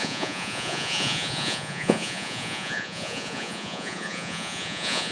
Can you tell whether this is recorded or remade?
remade